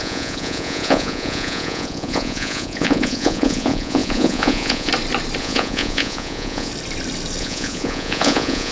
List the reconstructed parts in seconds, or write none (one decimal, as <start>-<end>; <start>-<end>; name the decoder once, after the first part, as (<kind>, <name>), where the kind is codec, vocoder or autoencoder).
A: 0.0-4.9 (vocoder, Vocos); 5.4-6.7; 7.4-8.7